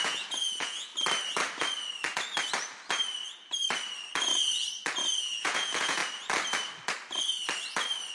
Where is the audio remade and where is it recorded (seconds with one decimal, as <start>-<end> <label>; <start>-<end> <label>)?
0.0-0.9 remade; 0.9-5.2 recorded; 5.2-6.0 remade; 6.0-8.1 recorded